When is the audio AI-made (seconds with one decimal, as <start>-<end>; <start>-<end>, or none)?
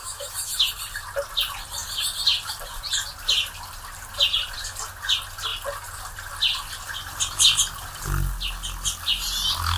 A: 0.0-0.7